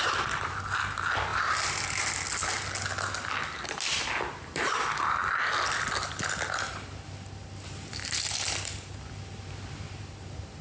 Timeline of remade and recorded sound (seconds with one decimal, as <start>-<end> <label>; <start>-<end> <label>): 0.0-10.6 recorded